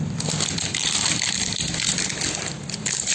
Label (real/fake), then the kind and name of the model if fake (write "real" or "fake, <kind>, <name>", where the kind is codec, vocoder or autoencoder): real